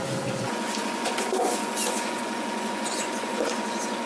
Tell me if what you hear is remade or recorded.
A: remade